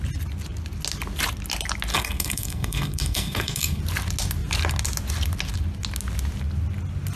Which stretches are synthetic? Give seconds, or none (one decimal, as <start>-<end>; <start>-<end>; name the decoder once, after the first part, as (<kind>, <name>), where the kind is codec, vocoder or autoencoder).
1.9-3.8 (codec, SNAC)

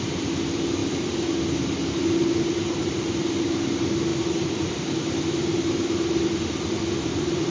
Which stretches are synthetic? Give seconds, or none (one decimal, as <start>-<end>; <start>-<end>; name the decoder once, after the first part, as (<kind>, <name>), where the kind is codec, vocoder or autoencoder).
none

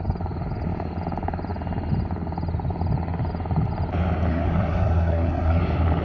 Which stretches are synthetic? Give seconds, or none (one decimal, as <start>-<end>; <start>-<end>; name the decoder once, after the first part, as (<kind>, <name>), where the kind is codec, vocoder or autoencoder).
4.3-5.6 (codec, SNAC)